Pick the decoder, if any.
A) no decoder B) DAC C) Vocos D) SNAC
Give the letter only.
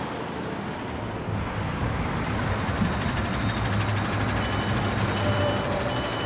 A